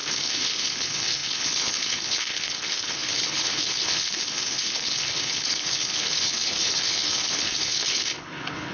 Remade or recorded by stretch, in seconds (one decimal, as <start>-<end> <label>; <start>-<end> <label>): 0.0-8.7 remade